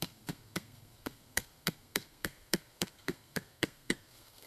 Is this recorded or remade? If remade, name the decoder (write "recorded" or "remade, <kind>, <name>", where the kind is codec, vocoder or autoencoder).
remade, codec, SNAC